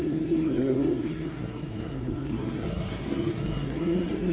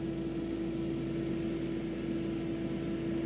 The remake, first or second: first